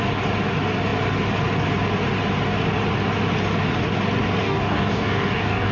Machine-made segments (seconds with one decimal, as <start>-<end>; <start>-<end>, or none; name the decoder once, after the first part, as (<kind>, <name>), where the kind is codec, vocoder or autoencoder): 4.4-5.7 (codec, DAC)